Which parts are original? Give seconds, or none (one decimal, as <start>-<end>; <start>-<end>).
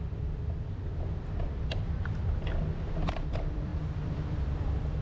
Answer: 0.9-1.8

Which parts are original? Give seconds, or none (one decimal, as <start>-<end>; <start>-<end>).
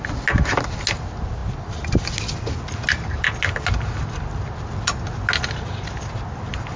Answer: 0.0-6.8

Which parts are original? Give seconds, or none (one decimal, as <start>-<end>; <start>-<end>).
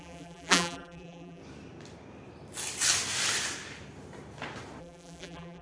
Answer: 1.4-4.8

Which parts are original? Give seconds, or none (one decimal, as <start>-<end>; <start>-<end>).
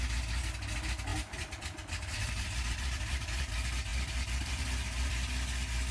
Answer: 0.0-1.1; 3.5-3.9; 5.1-5.9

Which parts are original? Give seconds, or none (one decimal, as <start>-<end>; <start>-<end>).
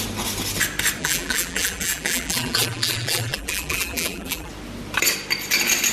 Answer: 0.0-1.0; 4.5-5.9